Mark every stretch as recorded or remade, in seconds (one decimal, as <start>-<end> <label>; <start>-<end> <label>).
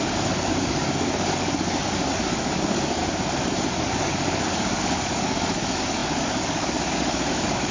0.0-3.0 remade; 3.0-3.8 recorded; 3.8-7.7 remade